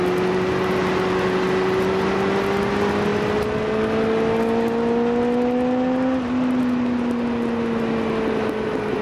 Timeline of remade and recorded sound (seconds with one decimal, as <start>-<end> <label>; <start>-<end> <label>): 0.0-9.0 recorded